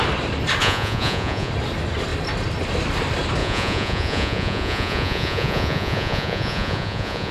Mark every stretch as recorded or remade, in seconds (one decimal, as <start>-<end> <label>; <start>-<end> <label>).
0.0-0.6 recorded; 0.6-1.5 remade; 1.5-3.4 recorded; 3.4-7.3 remade